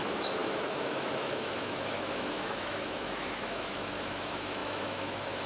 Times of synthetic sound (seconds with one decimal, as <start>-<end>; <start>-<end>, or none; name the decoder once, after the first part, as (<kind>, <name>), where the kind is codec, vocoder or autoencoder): 0.0-5.5 (autoencoder, DAC-VAE)